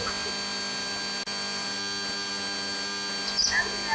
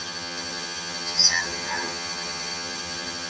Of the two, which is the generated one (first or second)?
second